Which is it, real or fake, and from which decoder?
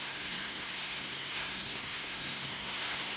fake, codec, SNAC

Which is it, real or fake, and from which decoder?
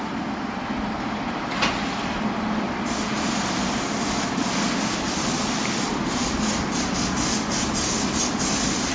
real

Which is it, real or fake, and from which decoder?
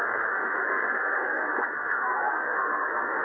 fake, codec, SNAC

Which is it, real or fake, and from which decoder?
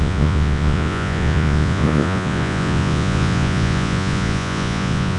fake, vocoder, Vocos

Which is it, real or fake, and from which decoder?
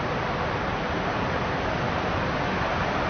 real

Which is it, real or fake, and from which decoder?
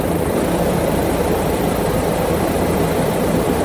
fake, vocoder, BigVGAN v2